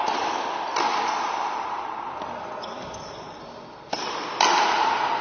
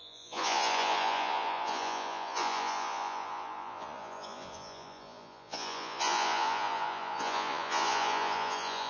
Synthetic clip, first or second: second